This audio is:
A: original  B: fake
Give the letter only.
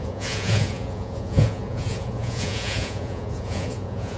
B